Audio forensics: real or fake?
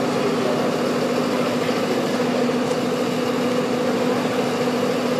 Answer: real